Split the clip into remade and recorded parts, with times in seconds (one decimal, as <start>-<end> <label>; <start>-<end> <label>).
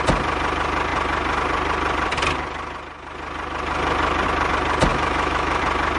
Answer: 0.0-4.9 recorded; 4.9-5.6 remade; 5.6-6.0 recorded